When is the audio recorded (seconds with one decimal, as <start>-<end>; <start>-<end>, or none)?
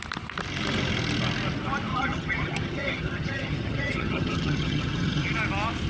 0.0-1.9; 5.4-5.9